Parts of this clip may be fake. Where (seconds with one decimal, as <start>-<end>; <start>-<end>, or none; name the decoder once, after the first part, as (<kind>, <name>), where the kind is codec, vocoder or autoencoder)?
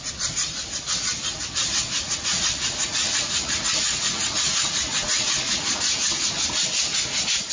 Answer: 1.8-6.3 (vocoder, Vocos)